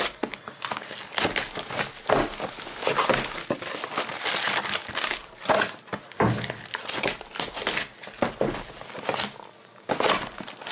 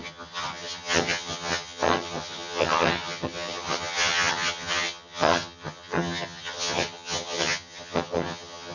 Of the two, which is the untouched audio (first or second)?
first